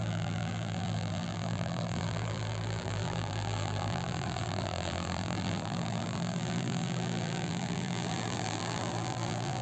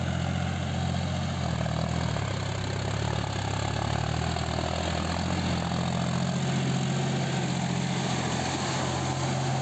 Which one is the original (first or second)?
second